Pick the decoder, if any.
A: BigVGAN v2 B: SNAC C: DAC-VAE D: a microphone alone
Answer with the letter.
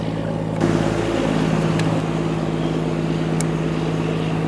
D